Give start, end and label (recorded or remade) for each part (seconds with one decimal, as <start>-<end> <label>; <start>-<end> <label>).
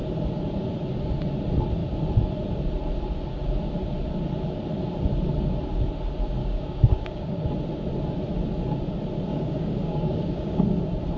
0.0-6.4 recorded; 6.4-7.5 remade; 7.5-9.3 recorded; 9.3-10.6 remade; 10.6-11.2 recorded